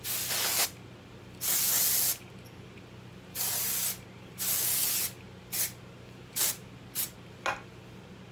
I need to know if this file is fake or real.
real